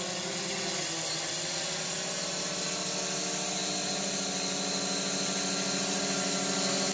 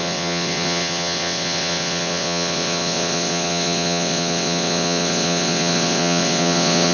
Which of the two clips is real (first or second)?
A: first